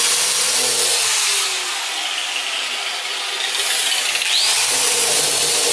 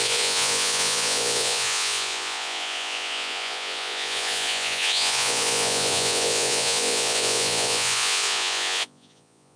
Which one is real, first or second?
first